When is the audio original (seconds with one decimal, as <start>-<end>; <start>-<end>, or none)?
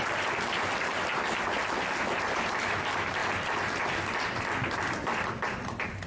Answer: 0.0-6.1